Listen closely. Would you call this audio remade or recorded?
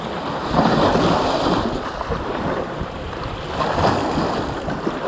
recorded